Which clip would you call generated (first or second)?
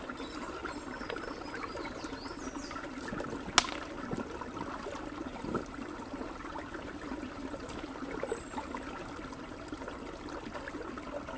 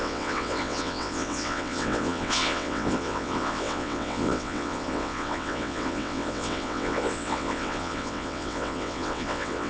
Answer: second